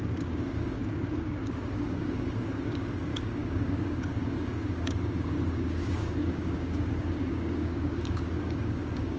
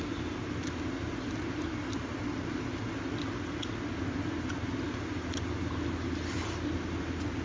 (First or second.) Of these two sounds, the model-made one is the first